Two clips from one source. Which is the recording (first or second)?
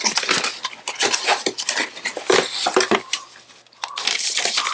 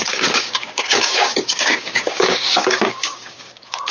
first